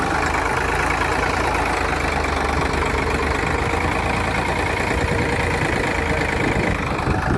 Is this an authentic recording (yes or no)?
yes